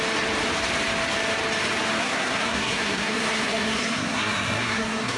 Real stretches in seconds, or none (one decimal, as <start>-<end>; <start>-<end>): 0.0-2.0